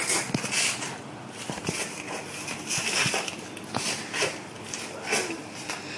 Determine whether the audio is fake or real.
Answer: real